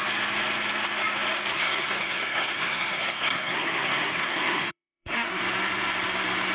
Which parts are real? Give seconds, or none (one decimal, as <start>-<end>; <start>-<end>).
0.0-1.5; 5.4-6.5

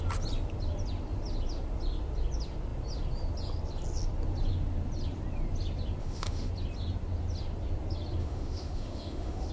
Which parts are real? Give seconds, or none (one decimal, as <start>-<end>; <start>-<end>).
0.0-6.0; 6.5-8.2

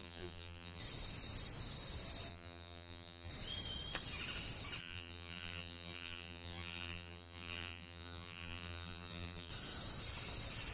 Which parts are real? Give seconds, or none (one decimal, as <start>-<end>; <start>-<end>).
0.8-2.3; 3.3-4.8; 9.5-10.7

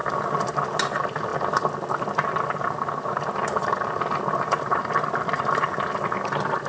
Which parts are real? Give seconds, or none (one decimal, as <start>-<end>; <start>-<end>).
0.0-6.7